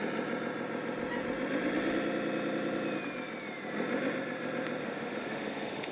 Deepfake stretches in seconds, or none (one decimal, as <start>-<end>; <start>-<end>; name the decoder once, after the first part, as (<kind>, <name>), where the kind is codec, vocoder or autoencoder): 4.8-5.9 (autoencoder, DAC-VAE)